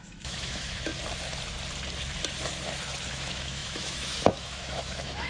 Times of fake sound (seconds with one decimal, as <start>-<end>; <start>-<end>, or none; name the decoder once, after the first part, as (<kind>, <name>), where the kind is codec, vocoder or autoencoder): 0.0-0.9 (autoencoder, DAC-VAE); 3.1-5.3

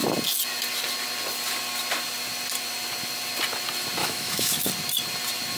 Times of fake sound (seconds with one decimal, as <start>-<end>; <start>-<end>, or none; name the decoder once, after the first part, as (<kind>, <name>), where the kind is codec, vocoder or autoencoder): 4.0-4.7 (autoencoder, DAC-VAE)

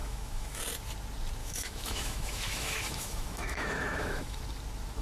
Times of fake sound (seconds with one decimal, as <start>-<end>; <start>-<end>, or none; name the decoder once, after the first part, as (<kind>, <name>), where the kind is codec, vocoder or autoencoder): 0.0-0.6 (autoencoder, DAC-VAE); 1.4-4.4